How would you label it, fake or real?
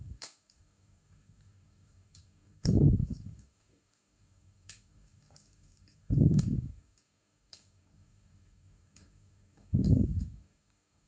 fake